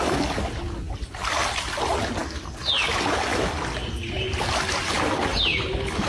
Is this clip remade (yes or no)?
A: no